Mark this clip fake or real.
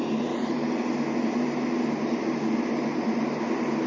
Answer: real